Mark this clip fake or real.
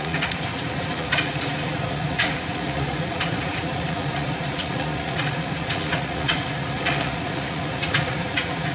fake